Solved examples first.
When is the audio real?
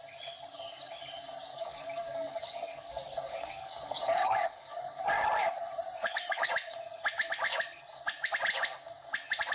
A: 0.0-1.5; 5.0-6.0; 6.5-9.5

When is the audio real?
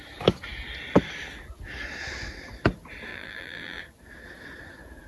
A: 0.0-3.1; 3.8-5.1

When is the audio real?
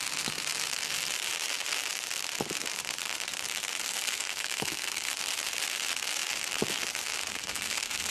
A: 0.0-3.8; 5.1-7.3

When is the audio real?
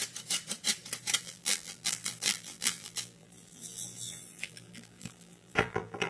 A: 0.0-1.2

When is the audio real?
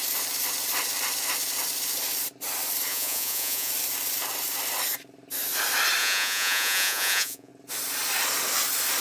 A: 0.0-2.9; 3.7-6.0; 7.5-9.0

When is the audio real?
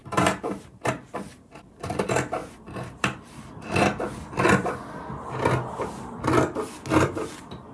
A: 0.9-2.4; 3.4-7.7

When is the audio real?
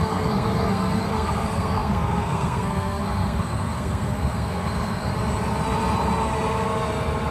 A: 5.1-7.3